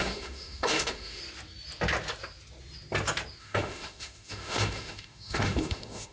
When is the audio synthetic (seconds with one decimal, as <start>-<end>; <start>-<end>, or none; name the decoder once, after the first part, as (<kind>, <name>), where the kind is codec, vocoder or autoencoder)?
0.0-1.2 (autoencoder, DAC-VAE); 3.4-6.1